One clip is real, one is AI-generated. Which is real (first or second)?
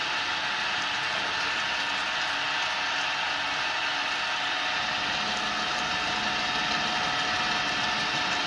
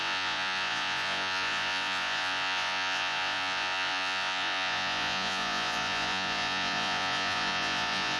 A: first